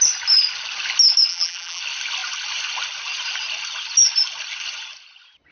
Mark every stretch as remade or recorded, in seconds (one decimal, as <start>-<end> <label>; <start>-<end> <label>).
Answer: 0.0-1.3 recorded; 1.3-1.8 remade; 1.8-5.5 recorded